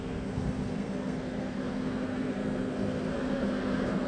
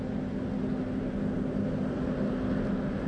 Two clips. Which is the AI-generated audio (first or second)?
first